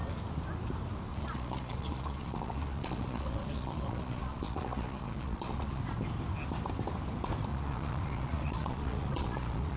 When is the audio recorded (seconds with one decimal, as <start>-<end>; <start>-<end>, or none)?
0.0-1.1; 5.8-7.5